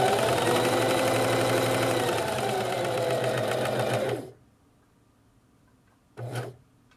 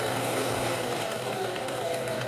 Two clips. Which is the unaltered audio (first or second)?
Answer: first